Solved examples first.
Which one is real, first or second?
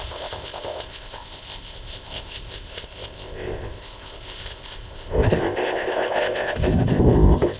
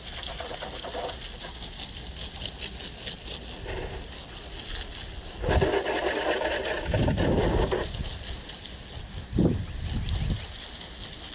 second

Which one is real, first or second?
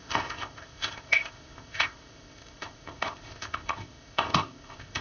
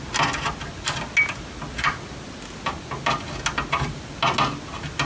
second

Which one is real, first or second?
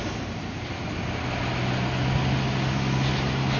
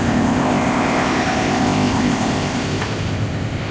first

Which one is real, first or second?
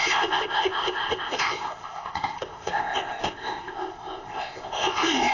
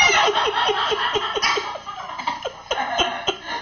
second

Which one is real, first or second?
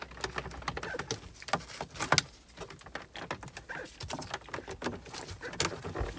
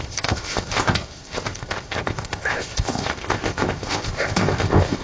first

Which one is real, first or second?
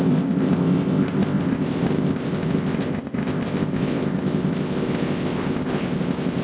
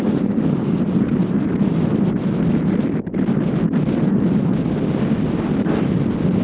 second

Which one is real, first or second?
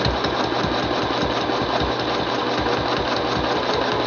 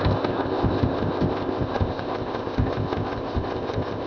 first